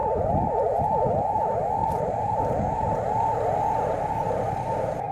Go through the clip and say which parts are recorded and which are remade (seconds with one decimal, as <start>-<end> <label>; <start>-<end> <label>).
0.0-1.8 recorded; 1.8-4.1 remade; 4.1-5.1 recorded